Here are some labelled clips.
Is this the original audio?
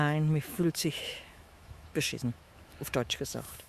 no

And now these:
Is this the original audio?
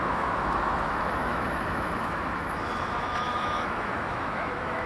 no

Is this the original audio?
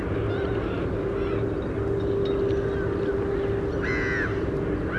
yes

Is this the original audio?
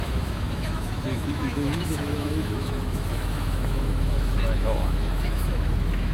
no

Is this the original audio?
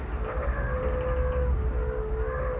yes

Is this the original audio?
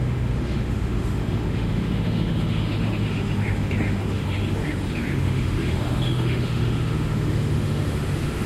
no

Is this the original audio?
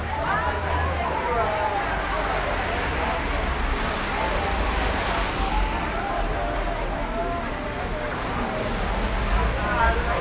yes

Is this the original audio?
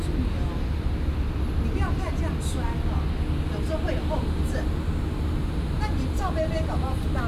yes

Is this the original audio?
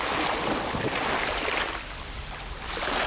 yes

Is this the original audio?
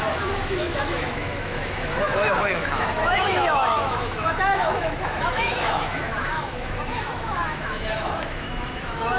no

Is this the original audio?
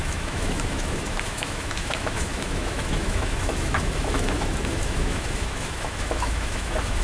no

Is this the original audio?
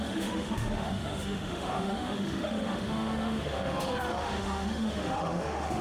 no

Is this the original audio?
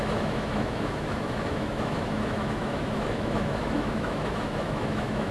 no